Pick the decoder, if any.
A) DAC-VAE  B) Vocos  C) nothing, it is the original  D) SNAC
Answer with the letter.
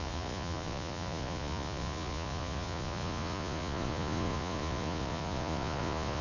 B